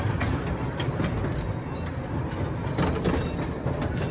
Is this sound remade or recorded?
recorded